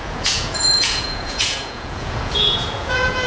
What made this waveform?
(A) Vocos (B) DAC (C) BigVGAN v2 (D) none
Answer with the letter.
A